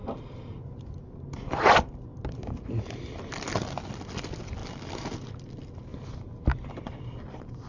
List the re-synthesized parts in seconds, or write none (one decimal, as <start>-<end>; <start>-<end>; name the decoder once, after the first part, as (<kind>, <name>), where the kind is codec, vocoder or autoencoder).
3.9-5.9 (vocoder, BigVGAN v2); 6.4-7.7